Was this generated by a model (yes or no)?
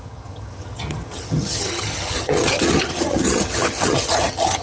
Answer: yes